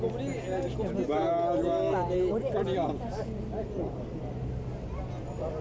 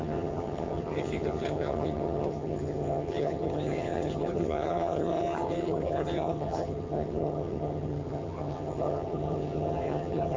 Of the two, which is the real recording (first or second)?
first